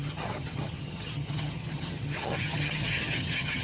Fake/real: fake